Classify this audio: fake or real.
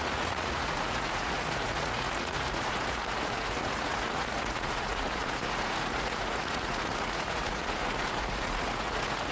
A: fake